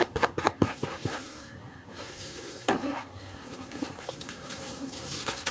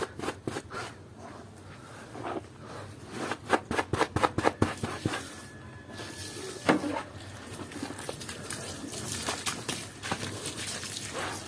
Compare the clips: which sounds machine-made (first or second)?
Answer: first